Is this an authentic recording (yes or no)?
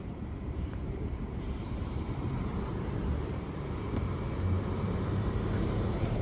no